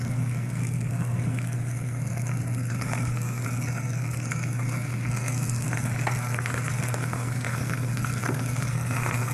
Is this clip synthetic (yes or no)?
yes